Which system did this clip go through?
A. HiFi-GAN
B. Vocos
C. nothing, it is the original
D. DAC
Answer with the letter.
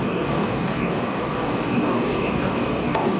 D